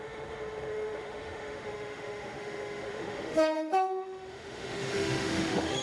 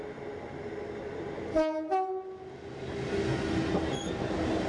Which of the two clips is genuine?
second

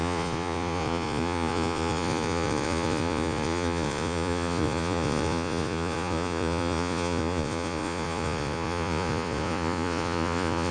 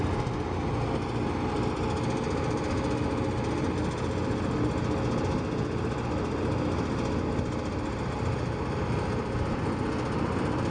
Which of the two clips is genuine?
second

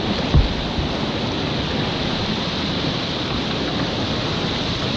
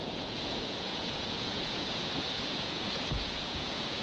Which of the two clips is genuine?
first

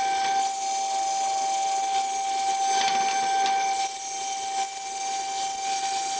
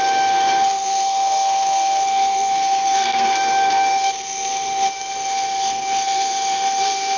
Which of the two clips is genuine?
first